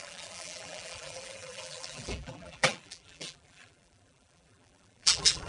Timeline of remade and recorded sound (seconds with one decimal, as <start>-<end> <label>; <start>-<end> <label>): 0.0-5.5 remade